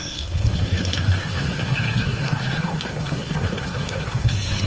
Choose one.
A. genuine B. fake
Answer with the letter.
B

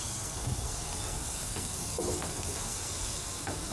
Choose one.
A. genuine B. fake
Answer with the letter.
B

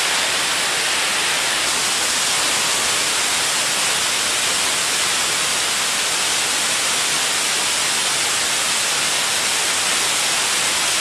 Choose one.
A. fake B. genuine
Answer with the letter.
B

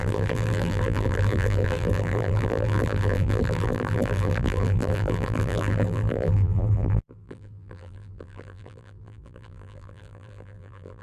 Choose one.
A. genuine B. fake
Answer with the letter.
B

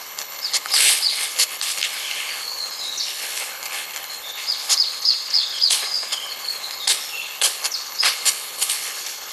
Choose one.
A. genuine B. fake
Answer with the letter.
B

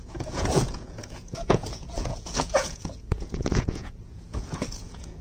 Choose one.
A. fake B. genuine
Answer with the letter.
A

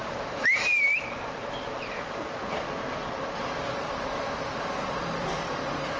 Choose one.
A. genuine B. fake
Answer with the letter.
B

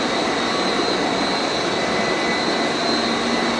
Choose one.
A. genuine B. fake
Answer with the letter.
B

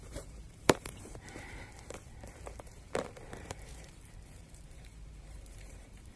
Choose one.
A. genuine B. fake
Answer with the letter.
B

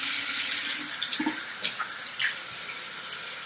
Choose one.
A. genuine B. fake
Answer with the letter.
A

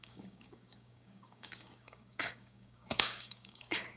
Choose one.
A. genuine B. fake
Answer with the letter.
B